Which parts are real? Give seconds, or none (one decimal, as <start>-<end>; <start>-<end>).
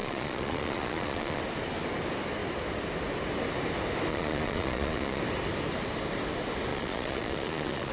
1.4-4.1; 5.2-6.7